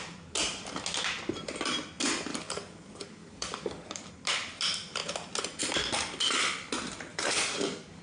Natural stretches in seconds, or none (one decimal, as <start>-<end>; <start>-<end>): 0.0-2.3; 4.1-7.1

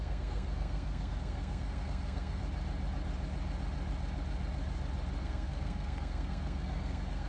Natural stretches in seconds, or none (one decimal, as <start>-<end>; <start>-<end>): 2.4-5.2

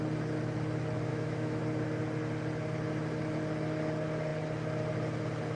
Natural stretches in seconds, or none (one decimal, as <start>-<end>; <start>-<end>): 0.0-1.1; 1.6-5.6

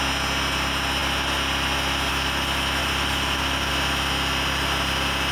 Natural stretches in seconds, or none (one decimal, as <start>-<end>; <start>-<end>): 0.0-2.8; 3.7-5.3

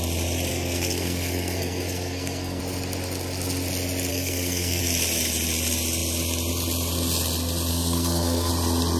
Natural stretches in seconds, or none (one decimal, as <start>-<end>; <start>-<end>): 0.0-0.5; 2.6-4.1; 4.8-7.7; 8.5-9.0

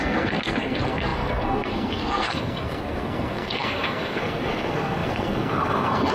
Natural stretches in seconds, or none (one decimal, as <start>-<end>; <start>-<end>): none

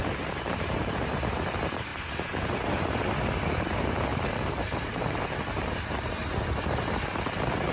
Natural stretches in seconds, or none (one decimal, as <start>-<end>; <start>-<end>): 1.0-1.9; 3.3-4.1; 5.4-7.7

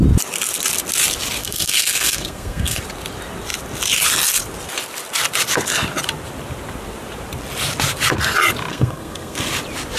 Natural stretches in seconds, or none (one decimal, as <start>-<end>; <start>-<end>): 0.0-1.4; 2.8-8.7; 9.5-10.0